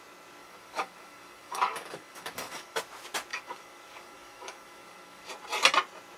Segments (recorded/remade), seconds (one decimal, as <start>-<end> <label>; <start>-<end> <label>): 0.0-0.4 recorded; 0.4-2.8 remade; 2.8-3.3 recorded; 3.3-5.3 remade; 5.3-6.2 recorded

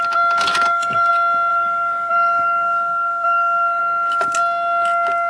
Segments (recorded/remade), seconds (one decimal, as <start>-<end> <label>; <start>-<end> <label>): 0.0-0.5 recorded; 0.5-1.1 remade; 1.1-1.5 recorded; 1.5-3.8 remade; 3.8-5.3 recorded

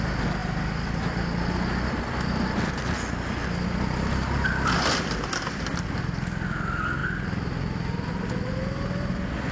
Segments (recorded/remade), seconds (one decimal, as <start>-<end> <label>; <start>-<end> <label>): 0.0-9.5 recorded

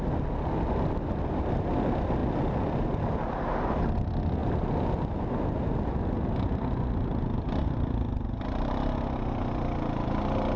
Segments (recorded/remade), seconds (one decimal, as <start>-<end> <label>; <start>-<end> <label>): 0.0-10.6 recorded

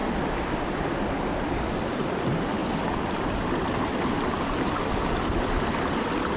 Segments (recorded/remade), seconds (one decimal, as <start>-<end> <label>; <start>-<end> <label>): 0.0-6.4 recorded

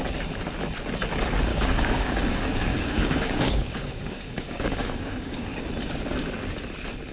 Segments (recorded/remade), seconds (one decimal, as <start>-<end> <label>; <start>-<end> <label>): 0.0-1.5 recorded; 1.5-5.6 remade; 5.6-7.1 recorded